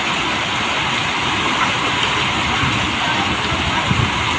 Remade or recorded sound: recorded